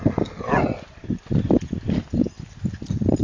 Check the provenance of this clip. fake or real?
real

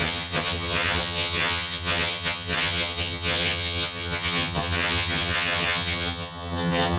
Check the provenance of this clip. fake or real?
fake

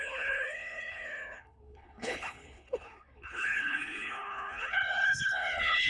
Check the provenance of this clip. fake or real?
fake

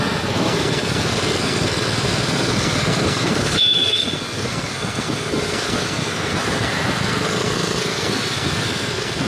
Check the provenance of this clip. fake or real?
fake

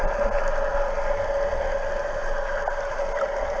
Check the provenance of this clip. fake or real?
real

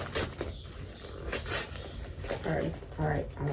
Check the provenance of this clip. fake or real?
real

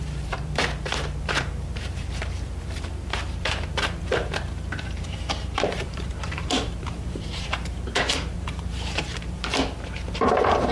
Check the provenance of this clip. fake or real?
fake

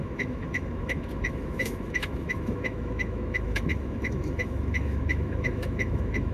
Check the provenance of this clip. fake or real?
fake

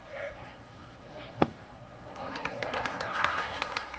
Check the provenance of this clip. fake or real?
fake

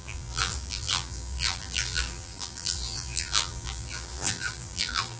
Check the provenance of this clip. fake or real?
fake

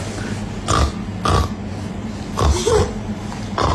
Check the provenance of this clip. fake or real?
real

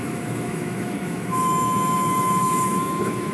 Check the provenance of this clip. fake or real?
fake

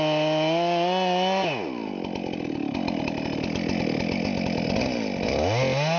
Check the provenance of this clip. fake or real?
real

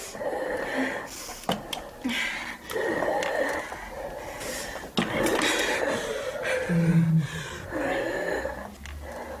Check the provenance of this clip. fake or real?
real